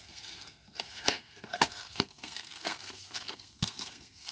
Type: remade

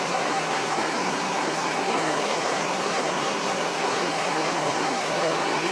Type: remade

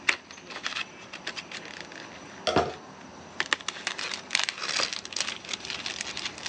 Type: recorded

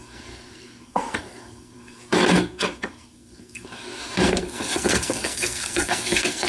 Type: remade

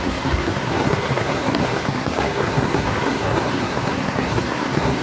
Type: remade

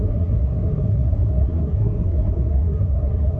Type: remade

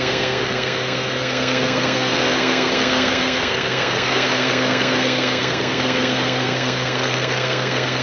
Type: remade